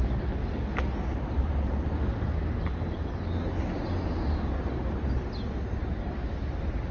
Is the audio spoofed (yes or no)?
no